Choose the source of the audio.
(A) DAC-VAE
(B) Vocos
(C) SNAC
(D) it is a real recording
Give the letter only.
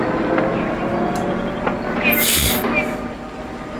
D